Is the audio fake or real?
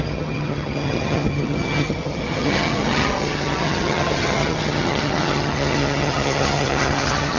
fake